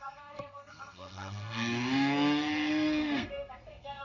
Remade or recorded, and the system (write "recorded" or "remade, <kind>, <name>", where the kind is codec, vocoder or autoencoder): remade, codec, SNAC